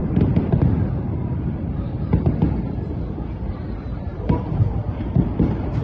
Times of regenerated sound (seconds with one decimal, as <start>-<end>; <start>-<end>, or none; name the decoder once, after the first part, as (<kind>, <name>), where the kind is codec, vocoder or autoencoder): 0.0-5.8 (vocoder, BigVGAN v2)